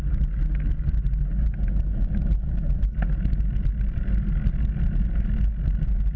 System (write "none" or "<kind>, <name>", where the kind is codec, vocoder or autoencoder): none